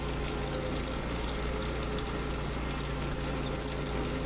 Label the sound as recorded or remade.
recorded